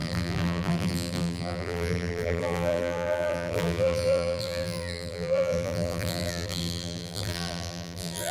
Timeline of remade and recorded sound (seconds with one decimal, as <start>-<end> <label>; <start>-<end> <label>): 0.0-8.3 remade